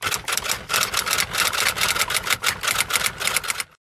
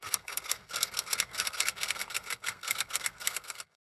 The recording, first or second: first